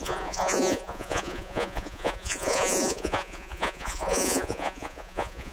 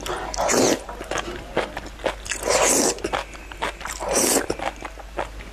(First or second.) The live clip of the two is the second